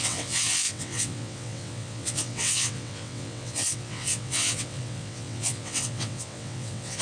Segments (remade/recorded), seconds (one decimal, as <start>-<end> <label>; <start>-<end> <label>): 0.0-7.0 remade